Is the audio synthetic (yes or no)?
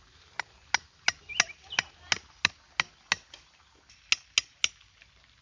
no